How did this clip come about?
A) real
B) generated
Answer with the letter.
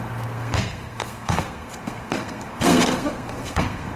B